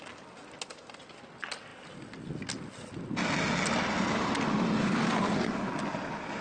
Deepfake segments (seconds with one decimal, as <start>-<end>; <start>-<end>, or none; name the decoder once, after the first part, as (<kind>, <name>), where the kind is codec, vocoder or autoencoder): none

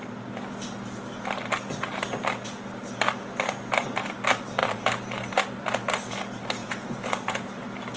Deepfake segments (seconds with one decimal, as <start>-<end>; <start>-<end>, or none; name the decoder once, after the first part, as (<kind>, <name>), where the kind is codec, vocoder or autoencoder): 6.6-7.6 (vocoder, Vocos)

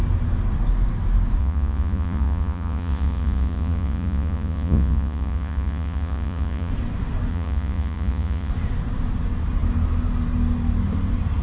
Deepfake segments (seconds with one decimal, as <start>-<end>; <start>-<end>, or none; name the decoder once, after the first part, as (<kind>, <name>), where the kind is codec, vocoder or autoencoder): 1.4-6.7 (vocoder, Vocos); 7.3-8.5

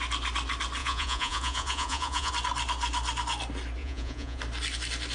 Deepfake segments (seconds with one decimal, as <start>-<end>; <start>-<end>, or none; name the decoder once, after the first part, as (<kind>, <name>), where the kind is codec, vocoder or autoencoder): 0.8-2.3 (vocoder, Vocos); 3.8-4.4

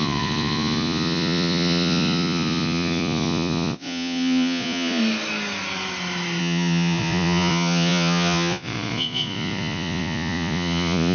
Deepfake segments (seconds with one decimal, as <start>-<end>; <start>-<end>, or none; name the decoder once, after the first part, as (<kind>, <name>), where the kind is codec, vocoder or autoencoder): 0.0-5.0 (vocoder, Vocos); 6.4-11.1

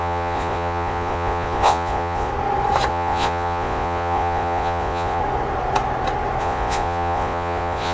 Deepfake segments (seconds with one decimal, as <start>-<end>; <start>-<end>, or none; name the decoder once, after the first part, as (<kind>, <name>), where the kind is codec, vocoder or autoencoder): 0.0-2.3 (vocoder, Vocos); 2.9-5.2; 6.4-7.9

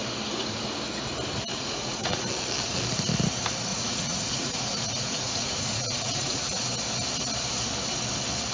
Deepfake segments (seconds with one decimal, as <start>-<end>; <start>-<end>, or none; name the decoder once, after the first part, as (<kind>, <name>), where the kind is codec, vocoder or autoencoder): 1.5-2.3 (vocoder, Vocos); 3.7-6.7

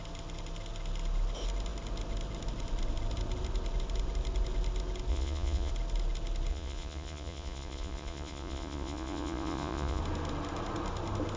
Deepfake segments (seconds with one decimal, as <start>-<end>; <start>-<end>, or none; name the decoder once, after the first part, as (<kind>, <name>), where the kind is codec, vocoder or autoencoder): 5.1-5.7 (vocoder, Vocos); 6.5-10.0